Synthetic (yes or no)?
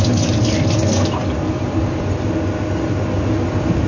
no